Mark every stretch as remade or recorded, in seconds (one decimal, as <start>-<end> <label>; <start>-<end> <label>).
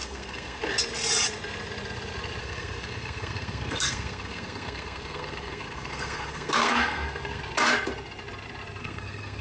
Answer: 0.0-0.6 remade; 0.6-2.4 recorded; 2.4-7.4 remade; 7.4-8.8 recorded; 8.8-9.4 remade